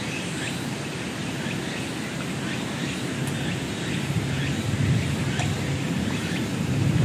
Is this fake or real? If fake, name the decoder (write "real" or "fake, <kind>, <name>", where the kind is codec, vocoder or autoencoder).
real